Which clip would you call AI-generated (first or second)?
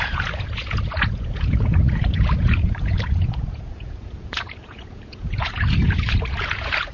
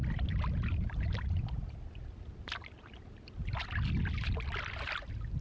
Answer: first